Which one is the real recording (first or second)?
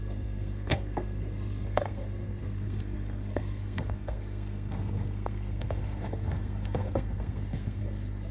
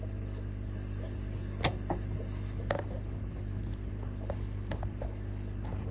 second